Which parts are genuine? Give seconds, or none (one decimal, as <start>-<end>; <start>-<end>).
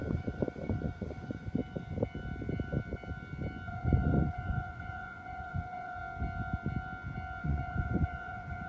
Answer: 1.6-3.7; 6.0-7.4